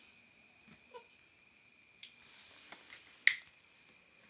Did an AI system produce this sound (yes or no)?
no